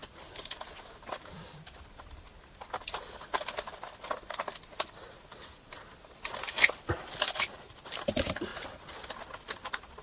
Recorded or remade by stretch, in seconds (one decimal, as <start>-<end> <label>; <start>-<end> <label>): 0.0-8.5 remade; 8.5-9.3 recorded; 9.3-10.0 remade